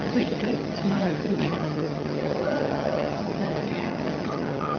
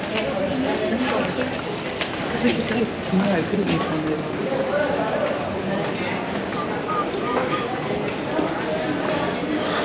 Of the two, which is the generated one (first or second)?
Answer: first